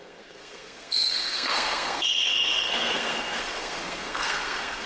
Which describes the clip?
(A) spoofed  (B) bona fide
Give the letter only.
A